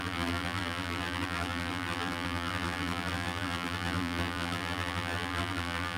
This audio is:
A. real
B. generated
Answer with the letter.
B